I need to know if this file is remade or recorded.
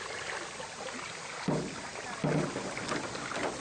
recorded